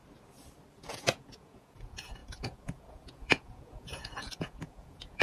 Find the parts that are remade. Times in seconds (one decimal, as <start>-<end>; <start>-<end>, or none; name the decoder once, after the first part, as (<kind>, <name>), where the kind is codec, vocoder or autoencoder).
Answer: 0.9-5.2 (vocoder, Vocos)